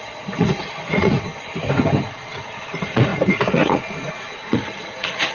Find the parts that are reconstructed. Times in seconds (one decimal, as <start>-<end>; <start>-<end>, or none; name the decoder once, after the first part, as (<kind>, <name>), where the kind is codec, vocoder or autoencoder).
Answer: 0.0-1.3 (vocoder, Vocos); 2.6-5.3